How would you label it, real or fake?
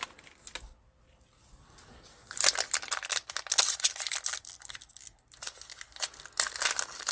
real